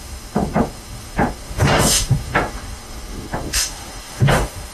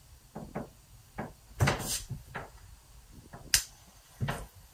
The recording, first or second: second